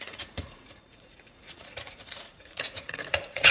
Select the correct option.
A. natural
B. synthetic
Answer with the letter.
B